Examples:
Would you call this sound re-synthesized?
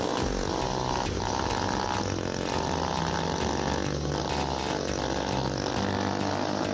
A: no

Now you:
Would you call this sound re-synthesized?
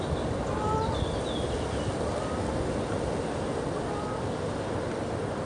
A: no